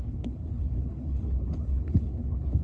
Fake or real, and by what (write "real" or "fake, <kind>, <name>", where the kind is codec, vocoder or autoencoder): fake, codec, HILCodec